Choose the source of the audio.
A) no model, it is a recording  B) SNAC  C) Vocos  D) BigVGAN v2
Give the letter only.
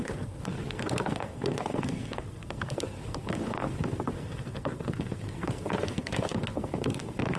B